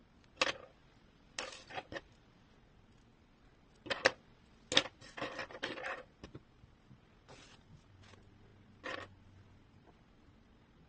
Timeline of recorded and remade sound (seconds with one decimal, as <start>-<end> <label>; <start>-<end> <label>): 0.0-10.9 recorded